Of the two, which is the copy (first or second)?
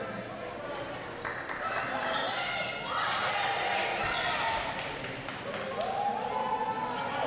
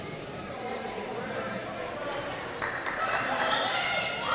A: second